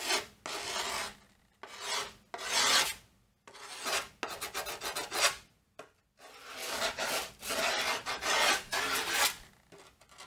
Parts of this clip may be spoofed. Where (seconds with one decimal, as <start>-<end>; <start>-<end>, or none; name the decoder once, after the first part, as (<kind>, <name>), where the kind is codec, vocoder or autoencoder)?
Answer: 6.6-7.1 (codec, DAC)